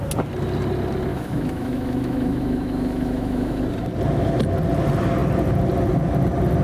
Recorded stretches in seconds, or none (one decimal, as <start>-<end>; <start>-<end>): 0.0-1.1; 3.6-6.6

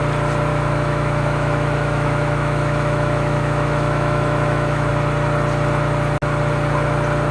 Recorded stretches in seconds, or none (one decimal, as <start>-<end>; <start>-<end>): 0.0-0.5; 4.9-7.3

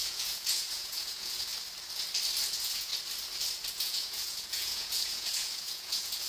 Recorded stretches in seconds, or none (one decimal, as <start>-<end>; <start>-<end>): 1.5-2.5; 2.9-3.7

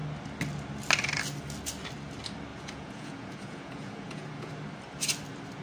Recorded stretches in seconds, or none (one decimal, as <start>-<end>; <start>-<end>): 0.0-2.5; 4.5-5.6

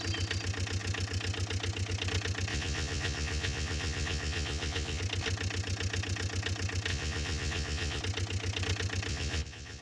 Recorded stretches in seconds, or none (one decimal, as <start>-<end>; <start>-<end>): 0.0-2.5; 5.0-6.9; 8.0-9.1

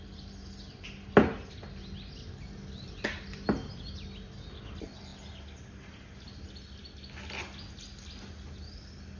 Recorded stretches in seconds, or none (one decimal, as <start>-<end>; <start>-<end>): 0.0-9.2